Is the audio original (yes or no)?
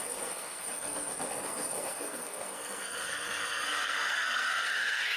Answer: no